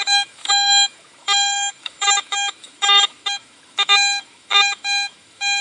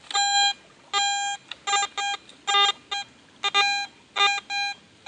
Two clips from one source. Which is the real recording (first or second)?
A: second